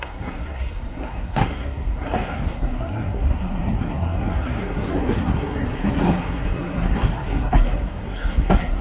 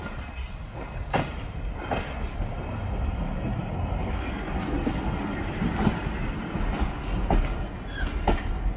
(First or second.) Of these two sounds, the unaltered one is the second